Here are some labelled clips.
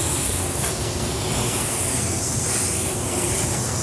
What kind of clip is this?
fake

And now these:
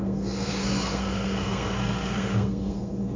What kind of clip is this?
fake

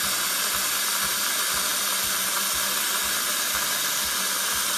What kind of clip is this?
real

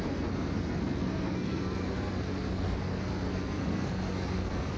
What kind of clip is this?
fake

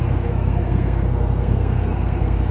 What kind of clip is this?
fake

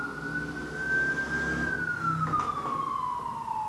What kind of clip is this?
real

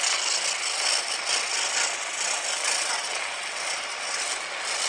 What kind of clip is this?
real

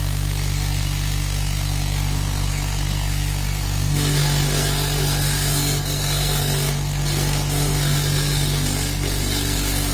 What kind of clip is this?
fake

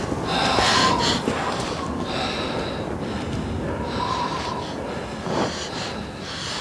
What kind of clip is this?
real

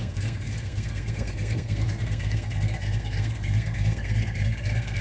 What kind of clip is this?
fake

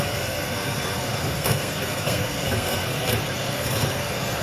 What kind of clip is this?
fake